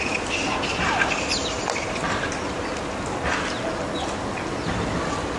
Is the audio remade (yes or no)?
no